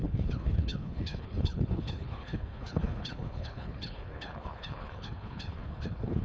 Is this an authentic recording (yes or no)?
no